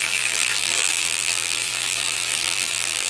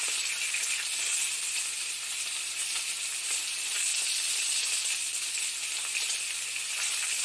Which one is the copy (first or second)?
first